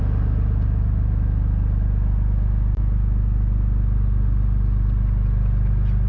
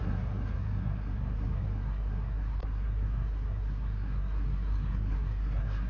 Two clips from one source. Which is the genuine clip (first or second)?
first